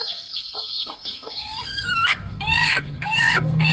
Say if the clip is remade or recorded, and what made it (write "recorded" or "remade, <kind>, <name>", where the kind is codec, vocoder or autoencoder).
remade, codec, SNAC